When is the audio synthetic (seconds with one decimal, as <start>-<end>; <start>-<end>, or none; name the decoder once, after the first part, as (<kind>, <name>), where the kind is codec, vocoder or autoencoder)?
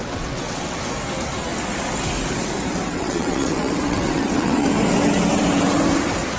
0.0-0.8 (vocoder, WaveNeXt); 2.9-4.7